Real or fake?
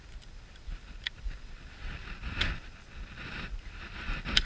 real